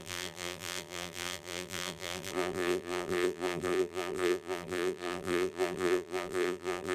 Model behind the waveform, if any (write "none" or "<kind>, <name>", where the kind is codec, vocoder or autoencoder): vocoder, BigVGAN v2